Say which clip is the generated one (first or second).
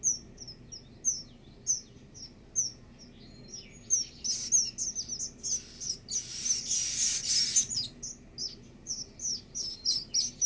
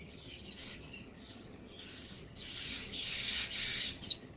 second